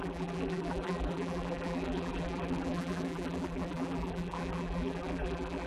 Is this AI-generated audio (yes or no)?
yes